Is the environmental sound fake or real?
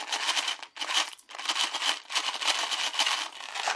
real